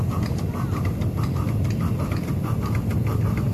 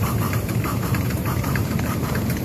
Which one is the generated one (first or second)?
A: second